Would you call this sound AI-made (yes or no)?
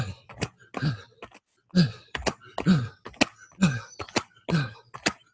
no